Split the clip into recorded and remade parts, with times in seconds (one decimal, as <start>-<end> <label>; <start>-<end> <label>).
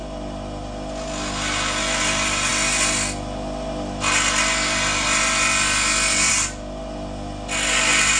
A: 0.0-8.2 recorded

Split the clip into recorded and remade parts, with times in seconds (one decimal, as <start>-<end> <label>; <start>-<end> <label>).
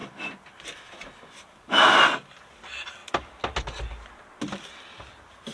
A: 0.0-5.5 recorded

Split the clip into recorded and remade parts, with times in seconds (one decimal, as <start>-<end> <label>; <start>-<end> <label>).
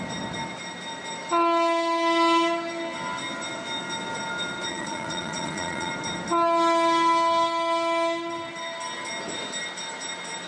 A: 0.0-4.7 recorded; 4.7-5.9 remade; 5.9-10.5 recorded